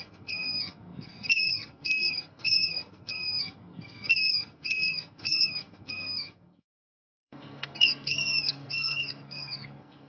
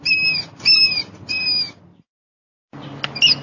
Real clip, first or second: second